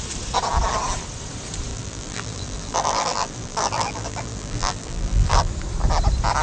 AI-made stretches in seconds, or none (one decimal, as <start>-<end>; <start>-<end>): 1.7-5.5